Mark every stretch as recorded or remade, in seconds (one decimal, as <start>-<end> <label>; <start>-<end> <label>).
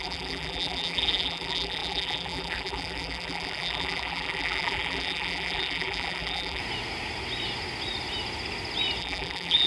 0.0-6.6 remade; 6.6-9.0 recorded; 9.0-9.7 remade